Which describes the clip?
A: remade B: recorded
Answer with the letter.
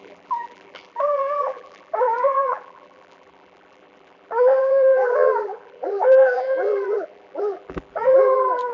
A